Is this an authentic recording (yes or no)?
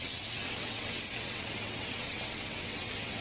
no